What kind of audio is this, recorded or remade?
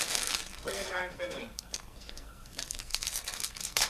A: remade